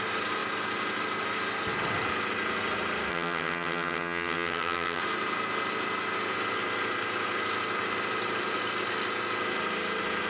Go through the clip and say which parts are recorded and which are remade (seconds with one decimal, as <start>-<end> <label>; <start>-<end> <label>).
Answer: 0.0-3.1 recorded; 3.1-5.0 remade; 5.0-10.3 recorded